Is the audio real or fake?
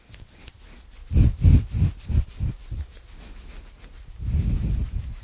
real